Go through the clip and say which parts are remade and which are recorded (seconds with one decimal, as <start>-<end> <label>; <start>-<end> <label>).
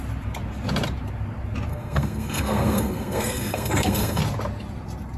0.0-1.7 recorded; 1.7-4.2 remade; 4.2-5.2 recorded